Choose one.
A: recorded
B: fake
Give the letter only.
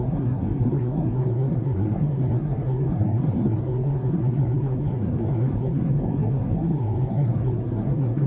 B